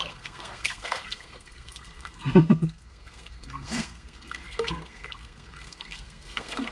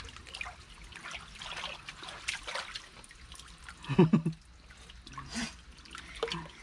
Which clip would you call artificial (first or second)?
first